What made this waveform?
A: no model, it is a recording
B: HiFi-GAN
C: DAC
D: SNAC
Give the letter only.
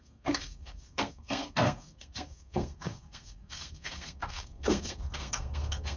D